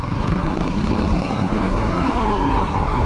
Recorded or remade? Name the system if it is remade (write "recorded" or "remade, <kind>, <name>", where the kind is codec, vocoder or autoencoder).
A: remade, codec, SNAC